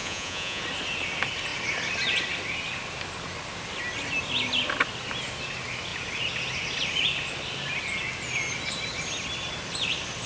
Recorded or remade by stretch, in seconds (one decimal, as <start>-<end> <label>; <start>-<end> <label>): 0.0-0.6 remade; 0.6-10.3 recorded